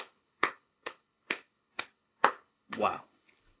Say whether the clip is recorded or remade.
remade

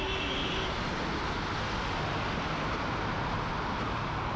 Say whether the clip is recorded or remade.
recorded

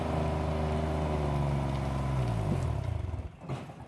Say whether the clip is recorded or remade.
recorded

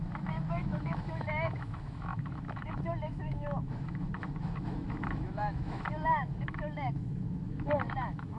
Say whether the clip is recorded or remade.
remade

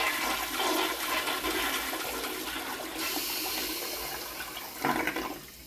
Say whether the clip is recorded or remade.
recorded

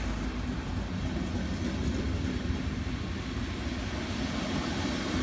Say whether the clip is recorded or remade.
recorded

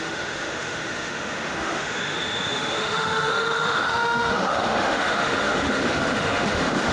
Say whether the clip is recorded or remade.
remade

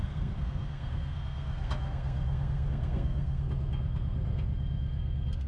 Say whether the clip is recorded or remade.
remade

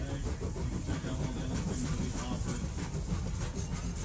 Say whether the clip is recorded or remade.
recorded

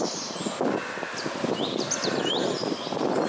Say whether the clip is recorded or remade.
recorded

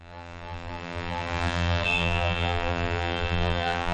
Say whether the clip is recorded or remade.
remade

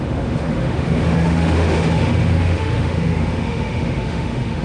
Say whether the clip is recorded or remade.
remade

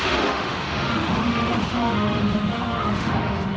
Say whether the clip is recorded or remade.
remade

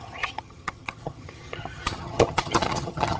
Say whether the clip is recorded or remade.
remade